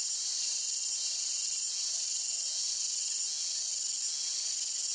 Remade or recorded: recorded